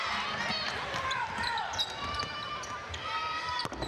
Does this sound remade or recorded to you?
recorded